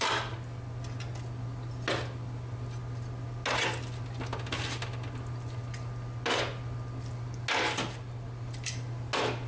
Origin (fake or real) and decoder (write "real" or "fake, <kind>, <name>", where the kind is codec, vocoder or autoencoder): real